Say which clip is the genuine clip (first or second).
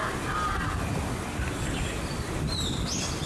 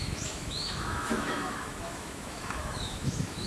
first